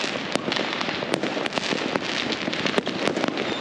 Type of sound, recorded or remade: recorded